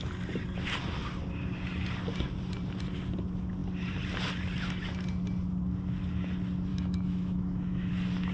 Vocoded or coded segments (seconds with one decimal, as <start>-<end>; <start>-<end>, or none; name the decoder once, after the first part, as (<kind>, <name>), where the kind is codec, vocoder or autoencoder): 6.7-7.9 (autoencoder, DAC-VAE)